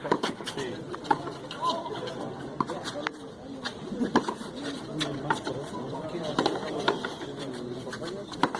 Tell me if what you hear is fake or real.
real